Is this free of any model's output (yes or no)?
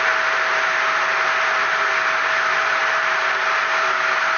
yes